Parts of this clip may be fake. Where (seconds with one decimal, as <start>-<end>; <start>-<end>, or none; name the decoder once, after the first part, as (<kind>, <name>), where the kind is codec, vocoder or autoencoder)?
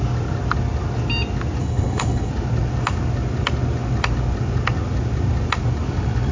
1.6-2.3 (codec, HILCodec)